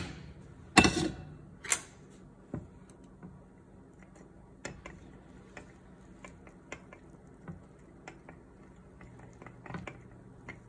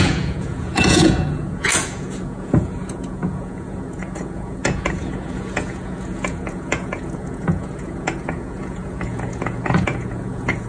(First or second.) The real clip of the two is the first